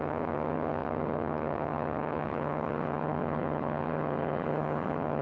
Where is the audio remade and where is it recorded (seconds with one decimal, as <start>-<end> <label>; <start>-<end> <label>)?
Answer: 0.0-5.2 remade